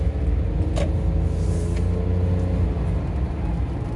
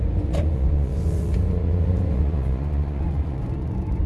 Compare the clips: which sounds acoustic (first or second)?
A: first